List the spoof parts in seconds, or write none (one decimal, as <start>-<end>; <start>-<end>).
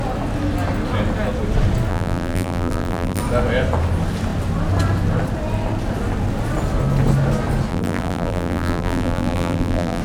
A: 1.9-3.2; 7.7-10.0